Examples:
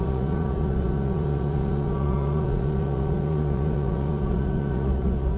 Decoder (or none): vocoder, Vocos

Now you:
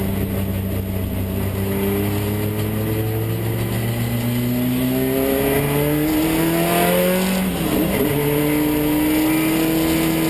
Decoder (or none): none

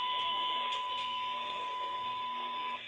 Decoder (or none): codec, SNAC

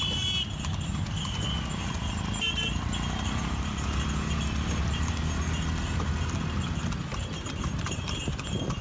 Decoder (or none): none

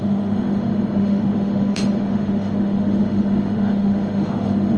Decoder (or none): autoencoder, DAC-VAE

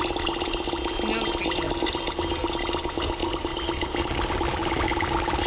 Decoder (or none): none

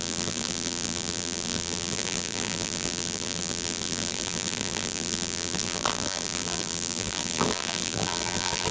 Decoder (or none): vocoder, BigVGAN v2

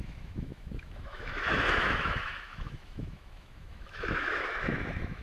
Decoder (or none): autoencoder, DAC-VAE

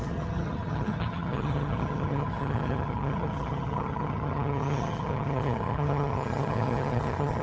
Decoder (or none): vocoder, HiFi-GAN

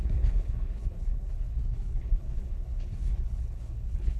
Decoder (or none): codec, HILCodec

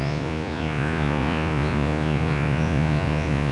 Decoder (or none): vocoder, Vocos